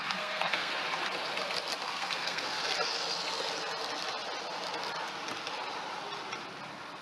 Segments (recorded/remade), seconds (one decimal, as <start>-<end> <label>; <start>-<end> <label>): 0.0-0.7 remade; 0.7-1.8 recorded; 1.8-2.6 remade; 2.6-7.0 recorded